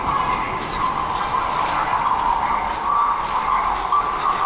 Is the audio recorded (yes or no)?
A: yes